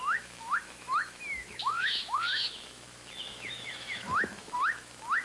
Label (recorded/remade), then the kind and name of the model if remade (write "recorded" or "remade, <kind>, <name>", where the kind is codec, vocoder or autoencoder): remade, autoencoder, DAC-VAE